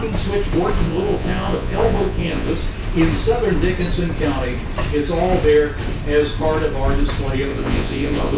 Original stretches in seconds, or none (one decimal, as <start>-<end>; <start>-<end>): 0.0-0.8; 2.5-7.5